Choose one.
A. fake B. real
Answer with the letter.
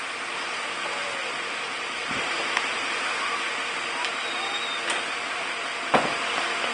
B